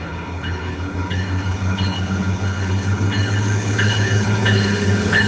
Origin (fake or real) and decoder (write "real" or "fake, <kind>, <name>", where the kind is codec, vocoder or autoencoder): fake, codec, HILCodec